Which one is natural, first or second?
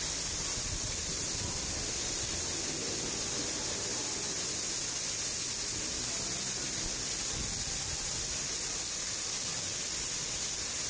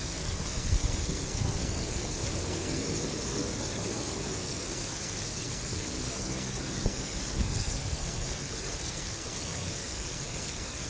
first